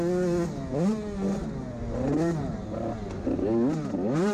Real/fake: real